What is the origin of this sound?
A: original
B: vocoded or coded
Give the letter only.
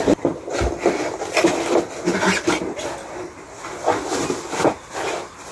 A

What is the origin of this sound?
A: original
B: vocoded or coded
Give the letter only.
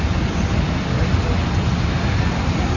A